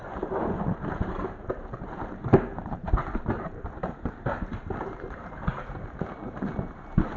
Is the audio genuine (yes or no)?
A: no